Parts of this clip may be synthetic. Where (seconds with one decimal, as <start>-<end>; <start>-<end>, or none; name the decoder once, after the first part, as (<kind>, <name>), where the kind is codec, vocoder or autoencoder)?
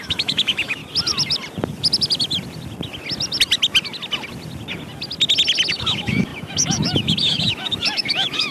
0.0-0.8 (autoencoder, DAC-VAE); 5.7-8.5